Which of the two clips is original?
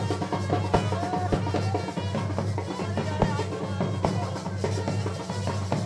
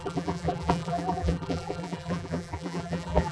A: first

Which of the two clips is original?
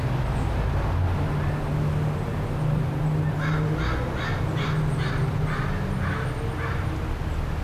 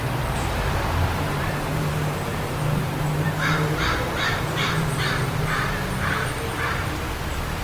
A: first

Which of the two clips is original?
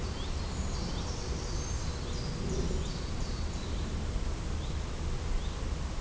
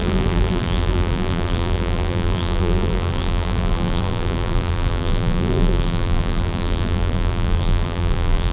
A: first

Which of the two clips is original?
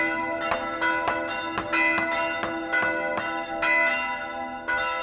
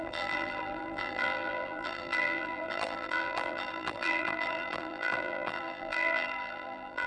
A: first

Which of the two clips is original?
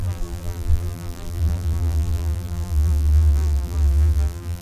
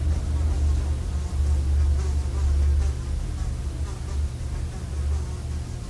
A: second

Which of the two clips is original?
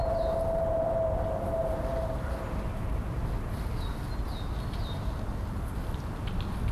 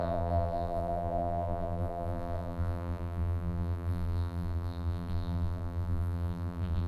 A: first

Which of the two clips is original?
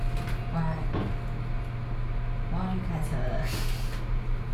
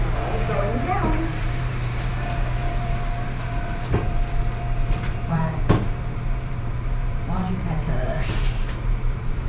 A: first